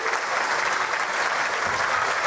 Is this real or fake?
real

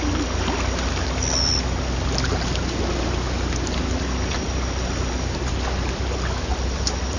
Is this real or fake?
real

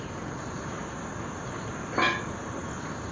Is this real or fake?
real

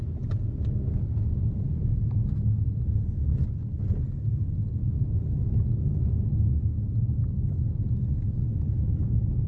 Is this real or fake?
real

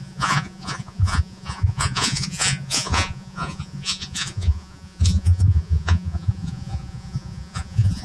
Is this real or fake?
fake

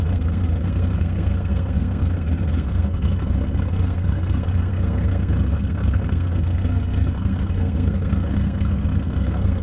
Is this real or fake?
fake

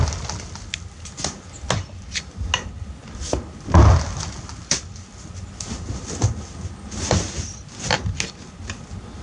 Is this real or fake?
real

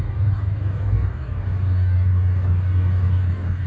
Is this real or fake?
fake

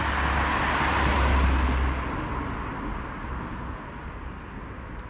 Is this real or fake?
real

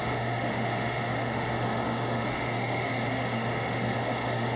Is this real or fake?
fake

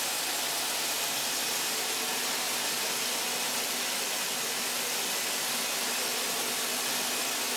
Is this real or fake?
real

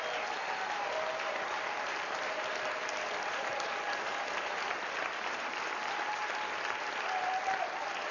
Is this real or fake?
real